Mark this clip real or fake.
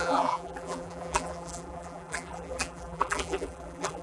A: fake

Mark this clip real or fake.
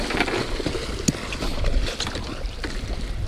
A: real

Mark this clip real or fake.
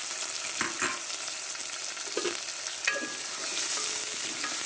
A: real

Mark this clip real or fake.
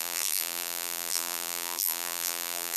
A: fake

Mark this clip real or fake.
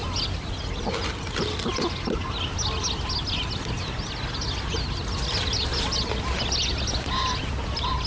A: real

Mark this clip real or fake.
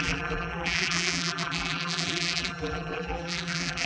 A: fake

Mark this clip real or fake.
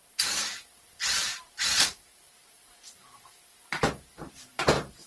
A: fake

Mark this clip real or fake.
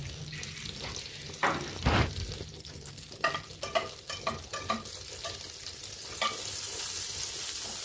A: real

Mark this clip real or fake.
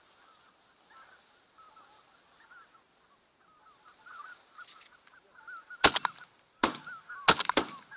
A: real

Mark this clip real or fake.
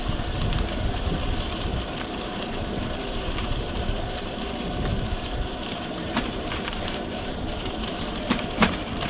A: fake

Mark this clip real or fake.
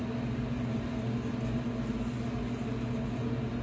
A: real